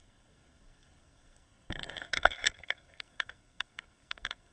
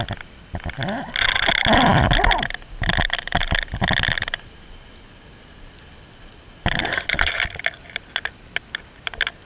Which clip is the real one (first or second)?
second